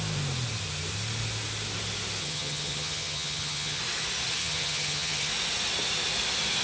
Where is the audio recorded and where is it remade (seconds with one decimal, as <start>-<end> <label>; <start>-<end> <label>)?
0.0-2.2 recorded; 2.2-3.8 remade; 3.8-4.4 recorded; 4.4-5.3 remade; 5.3-6.6 recorded